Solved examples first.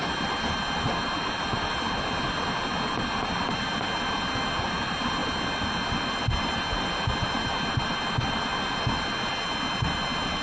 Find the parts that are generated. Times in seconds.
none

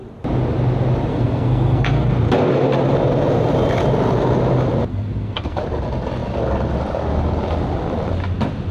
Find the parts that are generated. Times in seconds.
1.1-2.1 (codec, SNAC); 4.9-5.6